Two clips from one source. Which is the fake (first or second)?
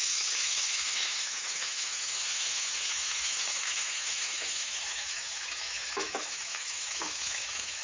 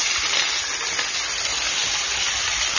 first